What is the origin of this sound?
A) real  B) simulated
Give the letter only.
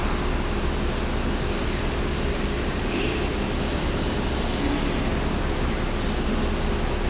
A